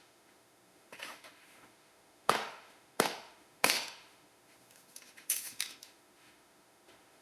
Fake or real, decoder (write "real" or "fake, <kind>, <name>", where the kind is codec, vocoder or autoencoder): fake, autoencoder, DAC-VAE